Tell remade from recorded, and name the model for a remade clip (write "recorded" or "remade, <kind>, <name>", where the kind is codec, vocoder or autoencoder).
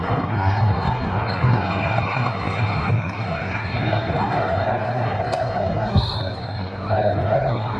remade, codec, SNAC